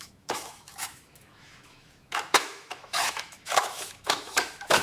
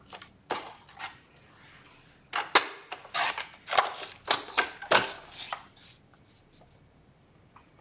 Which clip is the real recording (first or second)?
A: second